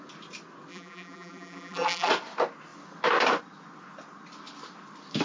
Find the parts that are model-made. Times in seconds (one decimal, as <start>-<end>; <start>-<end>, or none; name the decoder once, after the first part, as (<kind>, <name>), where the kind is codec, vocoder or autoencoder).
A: 0.7-2.1 (vocoder, BigVGAN v2)